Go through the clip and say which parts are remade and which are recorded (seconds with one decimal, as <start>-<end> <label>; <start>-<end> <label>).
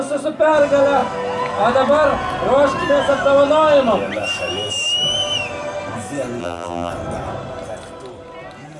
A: 0.0-6.4 recorded; 6.4-6.9 remade; 6.9-8.8 recorded